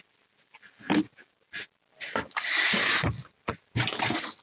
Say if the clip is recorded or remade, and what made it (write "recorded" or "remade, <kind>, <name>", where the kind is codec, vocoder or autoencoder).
recorded